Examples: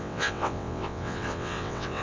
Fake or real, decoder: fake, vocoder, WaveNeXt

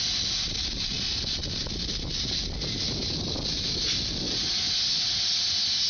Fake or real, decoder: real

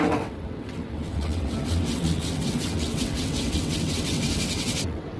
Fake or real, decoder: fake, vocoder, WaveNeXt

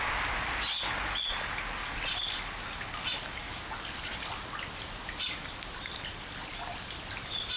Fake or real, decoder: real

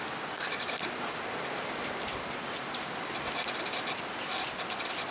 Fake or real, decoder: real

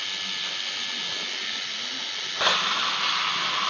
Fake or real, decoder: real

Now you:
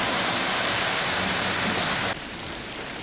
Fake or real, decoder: real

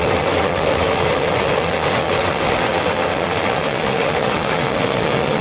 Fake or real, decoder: fake, vocoder, WaveNeXt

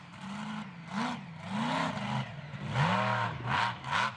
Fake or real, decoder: real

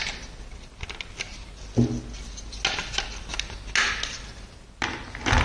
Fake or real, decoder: real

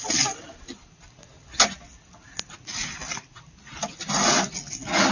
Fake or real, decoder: real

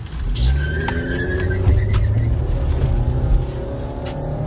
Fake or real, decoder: real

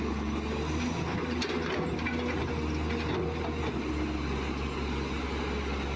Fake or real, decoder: real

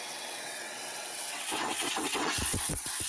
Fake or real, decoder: fake, vocoder, WaveNeXt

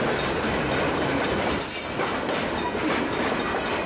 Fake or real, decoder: real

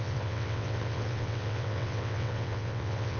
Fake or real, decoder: fake, vocoder, WaveNeXt